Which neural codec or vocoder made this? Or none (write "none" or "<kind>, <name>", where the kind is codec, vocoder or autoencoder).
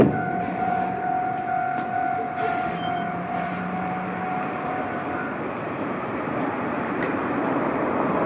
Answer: vocoder, BigVGAN v2